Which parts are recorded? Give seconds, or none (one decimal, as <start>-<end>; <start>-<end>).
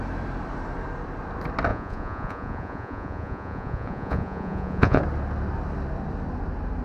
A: 0.0-1.7; 5.0-6.8